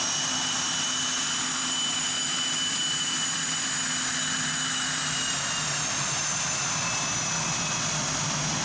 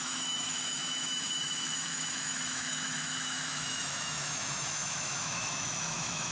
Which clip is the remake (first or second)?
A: second